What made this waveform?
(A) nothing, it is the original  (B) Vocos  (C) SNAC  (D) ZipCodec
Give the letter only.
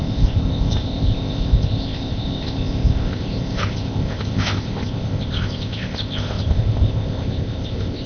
D